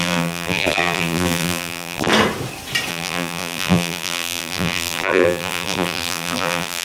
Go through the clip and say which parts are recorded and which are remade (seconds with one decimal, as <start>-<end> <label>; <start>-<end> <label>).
0.0-2.1 remade; 2.1-2.9 recorded; 2.9-6.8 remade